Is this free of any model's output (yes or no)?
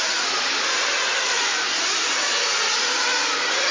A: yes